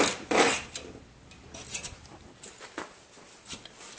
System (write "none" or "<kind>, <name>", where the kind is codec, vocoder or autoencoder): none